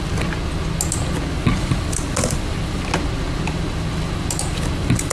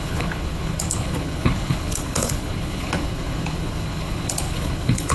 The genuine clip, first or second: first